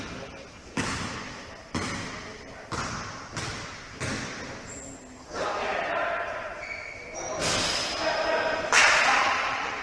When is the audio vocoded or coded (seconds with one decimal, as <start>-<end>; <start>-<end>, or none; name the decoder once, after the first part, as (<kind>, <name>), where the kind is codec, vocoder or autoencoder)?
8.8-9.8 (vocoder, Vocos)